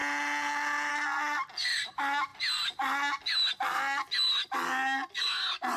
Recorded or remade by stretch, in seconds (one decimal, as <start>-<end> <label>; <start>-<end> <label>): 0.0-5.8 recorded